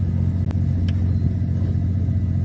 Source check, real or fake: real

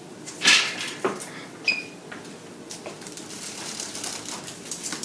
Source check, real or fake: real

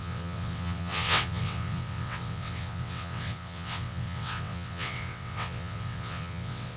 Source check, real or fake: fake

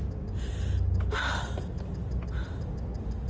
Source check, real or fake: real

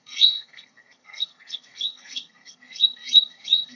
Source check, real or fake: fake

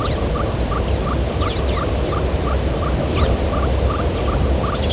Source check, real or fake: real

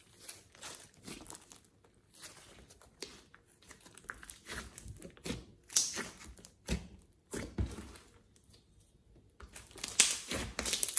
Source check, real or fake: real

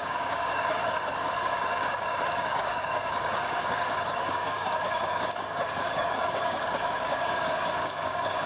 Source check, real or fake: fake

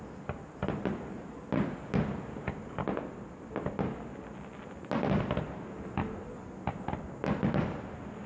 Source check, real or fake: real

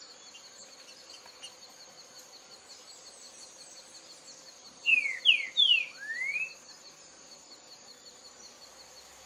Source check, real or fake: real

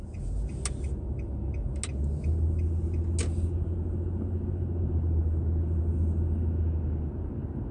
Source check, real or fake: real